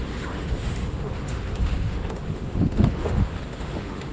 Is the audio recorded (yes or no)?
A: no